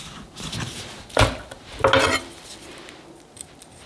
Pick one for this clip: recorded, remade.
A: recorded